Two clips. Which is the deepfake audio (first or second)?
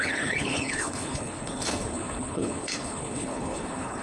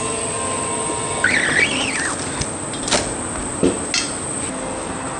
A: first